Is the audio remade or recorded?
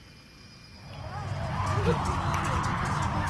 recorded